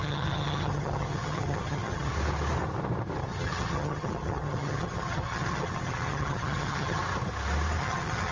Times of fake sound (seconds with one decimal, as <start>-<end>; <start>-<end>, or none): 0.0-2.1; 3.2-7.0; 7.8-8.3